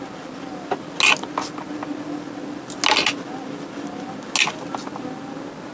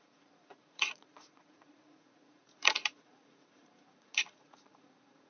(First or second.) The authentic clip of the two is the first